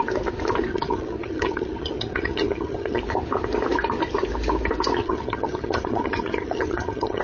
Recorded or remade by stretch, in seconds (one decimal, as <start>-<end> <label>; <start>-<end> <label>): 0.0-0.7 recorded; 0.7-3.0 remade; 3.0-5.0 recorded; 5.0-7.2 remade